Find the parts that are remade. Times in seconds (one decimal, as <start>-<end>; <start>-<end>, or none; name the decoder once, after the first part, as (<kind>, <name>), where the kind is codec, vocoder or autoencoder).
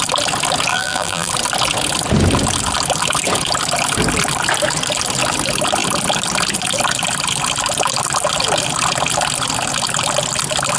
0.7-1.3 (vocoder, BigVGAN v2)